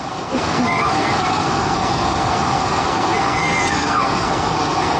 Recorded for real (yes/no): no